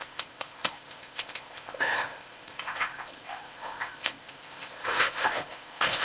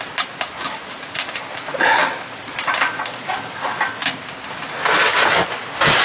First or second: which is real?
second